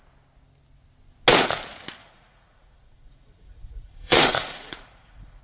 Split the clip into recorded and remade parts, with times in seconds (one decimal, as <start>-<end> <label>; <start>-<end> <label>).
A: 0.0-2.0 recorded; 2.0-5.4 remade